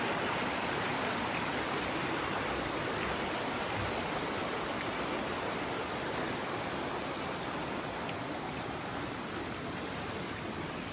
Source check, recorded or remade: recorded